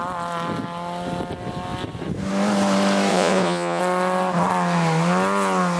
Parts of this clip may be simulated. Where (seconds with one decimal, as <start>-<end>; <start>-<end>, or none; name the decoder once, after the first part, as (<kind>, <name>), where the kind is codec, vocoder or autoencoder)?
3.1-3.8 (vocoder, Vocos)